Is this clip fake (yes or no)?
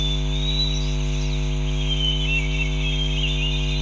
no